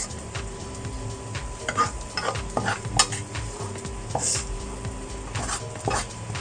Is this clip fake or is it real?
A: real